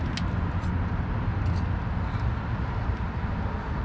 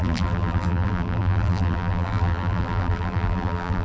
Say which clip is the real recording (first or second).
first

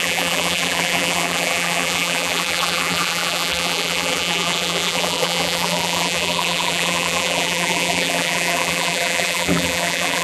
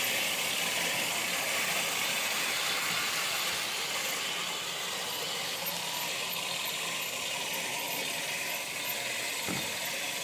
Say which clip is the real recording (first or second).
second